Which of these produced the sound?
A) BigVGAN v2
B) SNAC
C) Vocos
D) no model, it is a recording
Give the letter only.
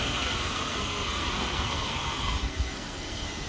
B